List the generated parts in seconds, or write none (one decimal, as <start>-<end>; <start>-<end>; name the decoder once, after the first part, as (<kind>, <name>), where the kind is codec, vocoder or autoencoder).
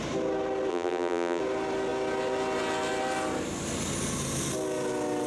0.7-1.4 (vocoder, BigVGAN v2)